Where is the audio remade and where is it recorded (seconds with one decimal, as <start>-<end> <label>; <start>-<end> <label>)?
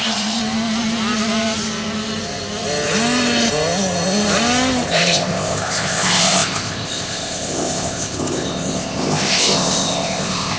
0.0-0.4 remade; 0.4-4.9 recorded; 4.9-10.6 remade